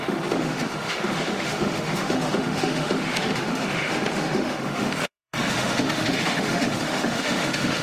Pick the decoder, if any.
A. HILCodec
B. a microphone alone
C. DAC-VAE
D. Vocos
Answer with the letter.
C